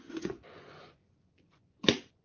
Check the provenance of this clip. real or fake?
fake